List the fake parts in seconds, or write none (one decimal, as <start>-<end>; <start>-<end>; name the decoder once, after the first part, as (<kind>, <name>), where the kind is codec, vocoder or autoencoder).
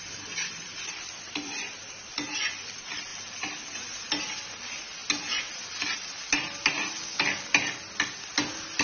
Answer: 0.0-3.1 (vocoder, BigVGAN v2); 4.2-5.0